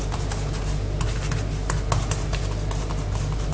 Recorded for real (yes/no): yes